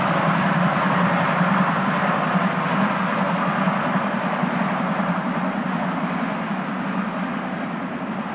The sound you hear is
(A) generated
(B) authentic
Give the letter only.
B